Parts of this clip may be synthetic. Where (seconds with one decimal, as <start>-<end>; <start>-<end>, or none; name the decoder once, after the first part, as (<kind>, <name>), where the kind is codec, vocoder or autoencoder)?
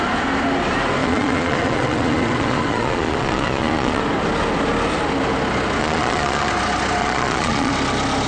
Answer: 1.0-4.0 (vocoder, Vocos); 5.8-6.5; 7.0-7.7